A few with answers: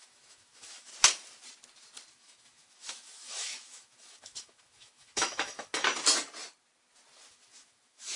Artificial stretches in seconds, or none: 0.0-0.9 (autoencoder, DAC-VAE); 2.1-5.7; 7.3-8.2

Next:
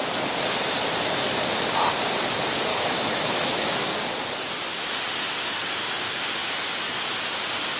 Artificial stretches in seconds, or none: 2.7-3.9 (autoencoder, DAC-VAE); 6.4-7.1

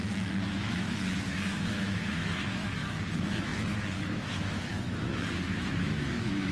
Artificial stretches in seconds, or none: 0.0-6.5 (autoencoder, DAC-VAE)

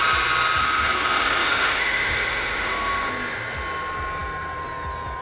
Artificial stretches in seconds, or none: 0.6-3.1 (autoencoder, DAC-VAE)